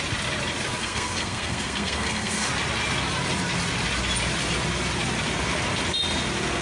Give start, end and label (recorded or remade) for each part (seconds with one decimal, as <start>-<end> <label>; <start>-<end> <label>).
0.0-0.8 recorded; 0.8-2.5 remade; 2.5-6.6 recorded